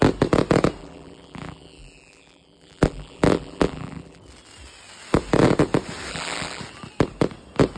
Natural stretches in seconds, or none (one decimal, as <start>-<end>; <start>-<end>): 0.0-0.8; 4.2-6.1; 6.6-7.8